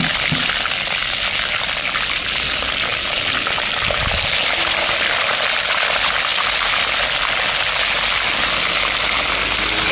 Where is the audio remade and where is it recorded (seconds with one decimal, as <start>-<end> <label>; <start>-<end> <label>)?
0.0-9.9 recorded